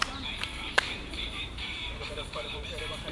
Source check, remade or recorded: remade